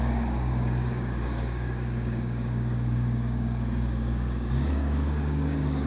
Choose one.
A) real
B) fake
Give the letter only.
B